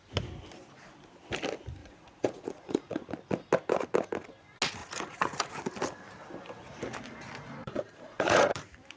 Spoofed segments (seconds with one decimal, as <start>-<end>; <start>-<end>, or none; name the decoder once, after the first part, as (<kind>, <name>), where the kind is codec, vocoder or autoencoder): 1.8-3.1 (vocoder, Vocos); 4.8-5.5; 7.6-8.6